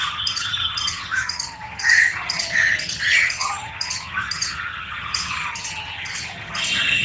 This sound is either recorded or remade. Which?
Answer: remade